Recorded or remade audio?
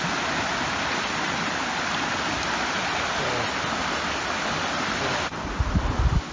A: recorded